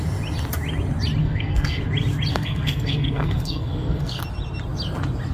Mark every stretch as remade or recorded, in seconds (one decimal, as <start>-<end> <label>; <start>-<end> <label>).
0.0-1.2 recorded; 1.2-1.8 remade; 1.8-2.3 recorded; 2.3-4.2 remade; 4.2-5.3 recorded